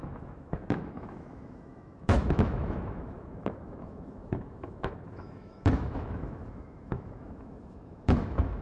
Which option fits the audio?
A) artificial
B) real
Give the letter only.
A